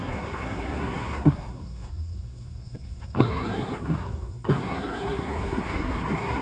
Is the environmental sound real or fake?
fake